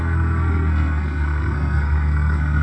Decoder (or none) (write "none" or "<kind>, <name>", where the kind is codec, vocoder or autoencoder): codec, SNAC